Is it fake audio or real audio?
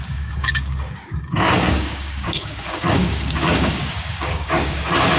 fake